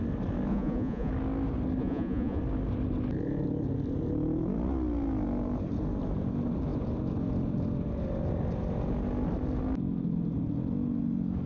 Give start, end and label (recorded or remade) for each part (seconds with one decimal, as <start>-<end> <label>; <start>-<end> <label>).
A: 0.0-0.5 recorded; 0.5-1.1 remade; 1.1-1.8 recorded; 1.8-2.4 remade; 2.4-11.5 recorded